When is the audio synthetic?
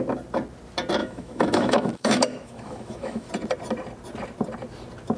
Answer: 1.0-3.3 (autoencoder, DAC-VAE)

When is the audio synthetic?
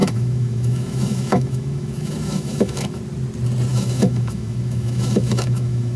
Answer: 0.0-3.0 (autoencoder, DAC-VAE); 3.7-6.0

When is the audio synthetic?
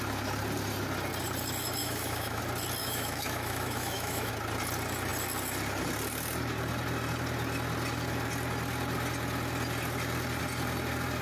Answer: 1.8-2.4 (autoencoder, DAC-VAE); 2.8-4.3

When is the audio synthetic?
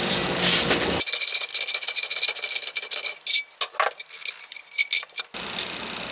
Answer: none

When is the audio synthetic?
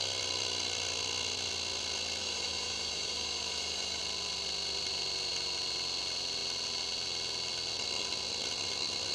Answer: 2.2-4.0 (autoencoder, DAC-VAE)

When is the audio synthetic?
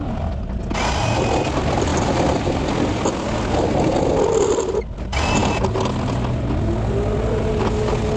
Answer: none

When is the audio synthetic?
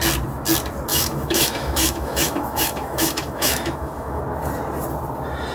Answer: 0.9-4.2 (autoencoder, DAC-VAE)